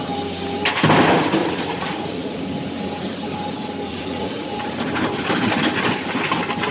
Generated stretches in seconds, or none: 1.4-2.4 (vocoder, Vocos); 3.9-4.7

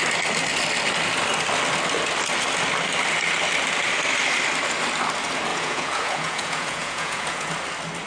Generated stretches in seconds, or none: 5.5-7.5 (vocoder, Vocos)

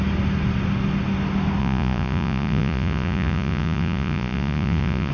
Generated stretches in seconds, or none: 1.6-5.1 (vocoder, Vocos)